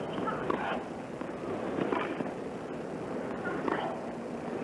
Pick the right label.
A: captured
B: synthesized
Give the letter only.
A